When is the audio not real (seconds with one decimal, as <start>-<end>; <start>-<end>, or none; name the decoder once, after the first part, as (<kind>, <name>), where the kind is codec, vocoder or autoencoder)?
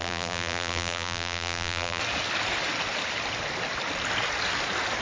0.0-2.0 (vocoder, BigVGAN v2)